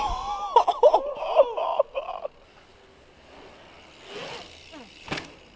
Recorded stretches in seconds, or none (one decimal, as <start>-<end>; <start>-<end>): 0.0-5.6